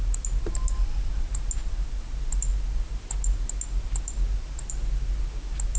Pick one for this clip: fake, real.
real